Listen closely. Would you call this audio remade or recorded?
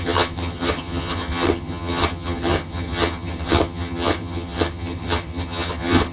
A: remade